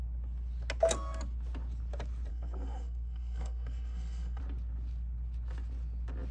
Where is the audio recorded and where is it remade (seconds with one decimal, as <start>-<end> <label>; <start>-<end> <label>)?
0.0-2.3 recorded; 2.3-4.4 remade; 4.4-6.3 recorded